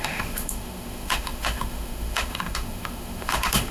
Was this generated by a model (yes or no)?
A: yes